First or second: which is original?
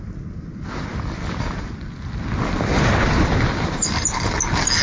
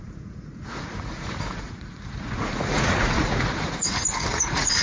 first